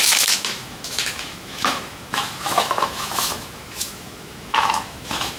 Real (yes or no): no